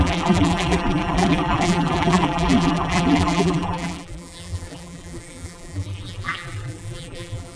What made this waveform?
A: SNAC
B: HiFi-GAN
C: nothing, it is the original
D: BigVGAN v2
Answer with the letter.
D